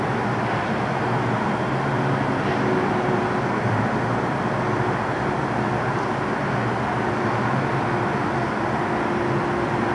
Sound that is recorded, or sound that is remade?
recorded